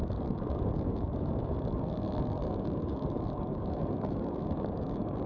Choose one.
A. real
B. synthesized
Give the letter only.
B